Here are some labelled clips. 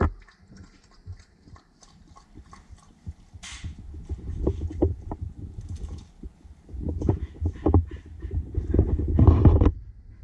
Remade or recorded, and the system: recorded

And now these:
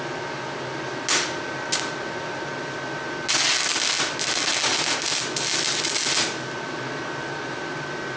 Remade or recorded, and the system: recorded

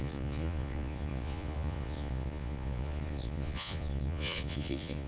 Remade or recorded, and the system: remade, vocoder, Vocos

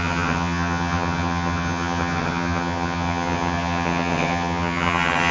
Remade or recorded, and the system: remade, vocoder, HiFi-GAN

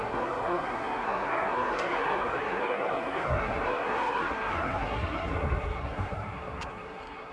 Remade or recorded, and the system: remade, codec, SNAC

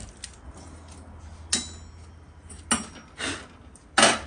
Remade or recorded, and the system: recorded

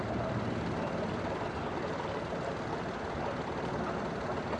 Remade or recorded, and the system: recorded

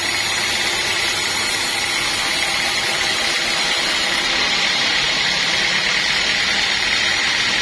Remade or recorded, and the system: recorded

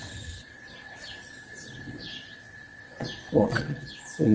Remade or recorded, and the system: remade, vocoder, WaveNeXt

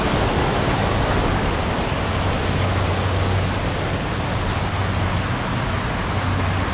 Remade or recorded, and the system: recorded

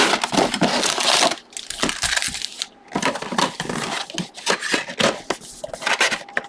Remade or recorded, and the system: recorded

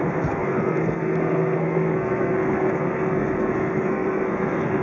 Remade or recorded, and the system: remade, codec, SNAC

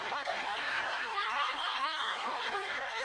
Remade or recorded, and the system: remade, codec, SNAC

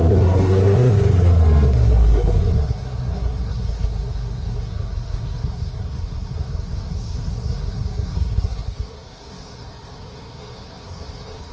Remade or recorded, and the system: remade, codec, SNAC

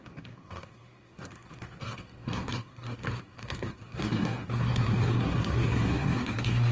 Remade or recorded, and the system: remade, codec, SNAC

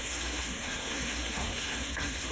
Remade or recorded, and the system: remade, codec, SNAC